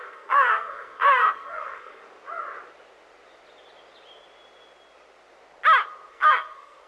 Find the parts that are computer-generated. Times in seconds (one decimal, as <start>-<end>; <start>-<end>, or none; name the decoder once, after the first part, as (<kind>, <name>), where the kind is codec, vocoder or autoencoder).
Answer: 0.0-2.0 (codec, SNAC); 6.1-6.9

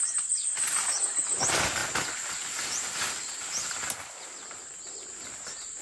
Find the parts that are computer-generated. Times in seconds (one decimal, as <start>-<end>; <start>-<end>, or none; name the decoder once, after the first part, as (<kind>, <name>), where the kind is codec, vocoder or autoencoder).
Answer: none

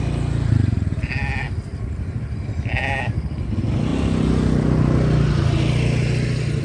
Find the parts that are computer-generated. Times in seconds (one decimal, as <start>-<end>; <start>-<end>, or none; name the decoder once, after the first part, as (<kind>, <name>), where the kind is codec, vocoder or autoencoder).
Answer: none

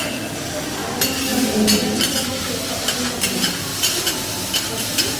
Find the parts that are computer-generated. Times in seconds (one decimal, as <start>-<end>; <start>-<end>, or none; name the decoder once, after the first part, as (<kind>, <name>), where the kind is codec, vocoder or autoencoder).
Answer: none